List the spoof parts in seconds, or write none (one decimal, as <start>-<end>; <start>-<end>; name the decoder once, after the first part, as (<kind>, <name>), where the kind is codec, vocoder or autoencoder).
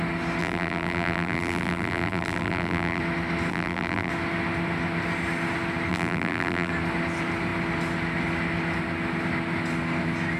0.4-3.0 (vocoder, BigVGAN v2); 3.5-4.1; 5.9-6.7